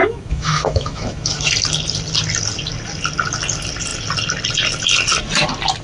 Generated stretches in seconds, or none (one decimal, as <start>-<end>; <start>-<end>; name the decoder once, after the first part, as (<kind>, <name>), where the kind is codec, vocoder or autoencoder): 0.0-1.5 (autoencoder, DAC-VAE)